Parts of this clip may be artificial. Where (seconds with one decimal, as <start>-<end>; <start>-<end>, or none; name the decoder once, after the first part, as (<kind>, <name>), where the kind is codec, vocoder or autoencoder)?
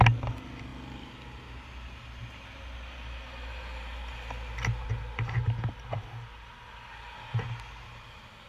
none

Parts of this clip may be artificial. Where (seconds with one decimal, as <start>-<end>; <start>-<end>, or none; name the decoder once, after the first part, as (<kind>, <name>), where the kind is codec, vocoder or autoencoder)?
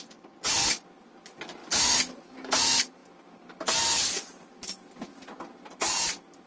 none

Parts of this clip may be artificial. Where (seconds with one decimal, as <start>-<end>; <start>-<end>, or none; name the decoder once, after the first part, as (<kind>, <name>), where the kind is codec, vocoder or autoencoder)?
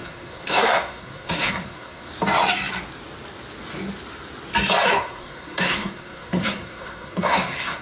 0.0-2.1 (codec, SNAC); 4.9-7.8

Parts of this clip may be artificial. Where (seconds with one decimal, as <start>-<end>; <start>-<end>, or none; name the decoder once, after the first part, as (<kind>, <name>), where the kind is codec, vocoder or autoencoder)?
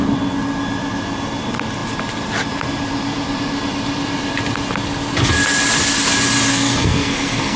6.5-7.6 (codec, SNAC)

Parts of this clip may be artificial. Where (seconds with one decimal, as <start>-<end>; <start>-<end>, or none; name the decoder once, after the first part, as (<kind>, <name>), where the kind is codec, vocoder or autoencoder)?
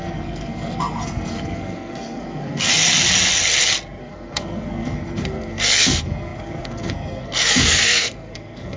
0.0-2.7 (codec, SNAC); 4.0-8.8